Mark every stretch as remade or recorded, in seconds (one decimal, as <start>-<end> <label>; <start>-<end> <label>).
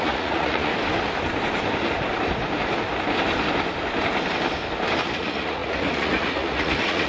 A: 0.0-0.7 remade; 0.7-5.0 recorded; 5.0-7.1 remade